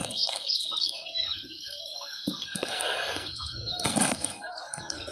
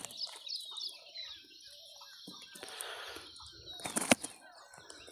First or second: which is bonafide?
second